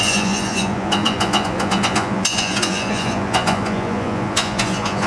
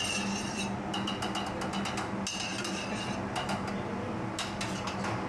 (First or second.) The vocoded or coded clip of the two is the first